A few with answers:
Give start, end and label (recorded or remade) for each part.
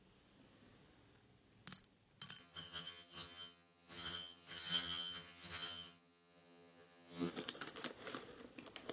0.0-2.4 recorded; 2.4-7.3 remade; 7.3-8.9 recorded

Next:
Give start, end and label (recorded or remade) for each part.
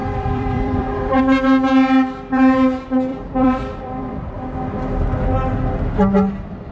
0.0-1.2 remade; 1.2-3.1 recorded; 3.1-4.3 remade; 4.3-6.7 recorded